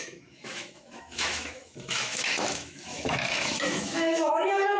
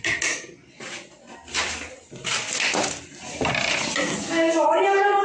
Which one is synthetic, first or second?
first